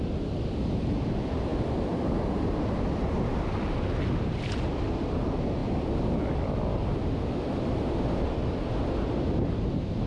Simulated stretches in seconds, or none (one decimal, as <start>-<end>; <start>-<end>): none